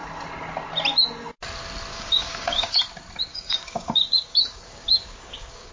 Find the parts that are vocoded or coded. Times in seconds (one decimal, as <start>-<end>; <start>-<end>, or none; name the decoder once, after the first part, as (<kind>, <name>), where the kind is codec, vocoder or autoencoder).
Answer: 1.9-2.8 (codec, DAC); 3.3-5.7